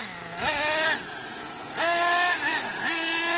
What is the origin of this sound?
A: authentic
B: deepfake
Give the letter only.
A